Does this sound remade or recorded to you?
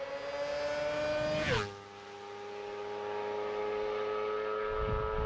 recorded